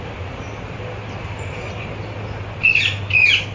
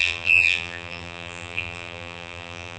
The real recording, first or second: first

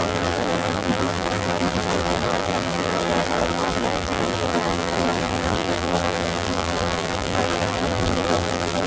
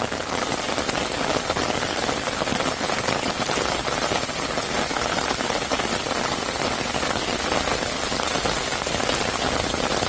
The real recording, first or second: second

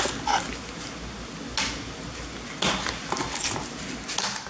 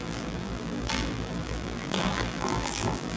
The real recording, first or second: first